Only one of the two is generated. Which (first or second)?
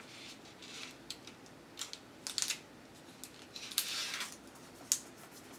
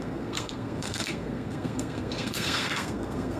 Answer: second